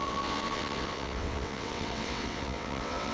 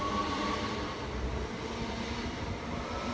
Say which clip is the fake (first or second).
first